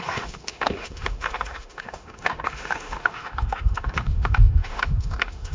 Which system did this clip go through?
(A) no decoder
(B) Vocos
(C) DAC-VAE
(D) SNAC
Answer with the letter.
C